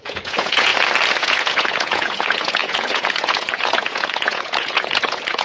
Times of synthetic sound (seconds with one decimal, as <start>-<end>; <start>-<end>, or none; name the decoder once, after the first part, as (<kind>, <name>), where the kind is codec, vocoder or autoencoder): 0.0-0.7 (vocoder, Vocos); 1.2-5.4